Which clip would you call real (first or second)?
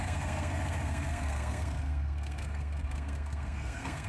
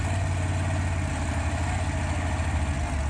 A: second